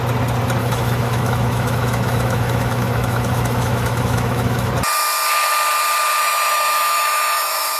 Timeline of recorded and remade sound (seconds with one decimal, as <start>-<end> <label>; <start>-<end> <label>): 0.0-0.6 recorded; 0.6-4.7 remade; 4.7-6.2 recorded; 6.2-7.8 remade